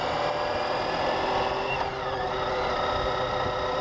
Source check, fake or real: real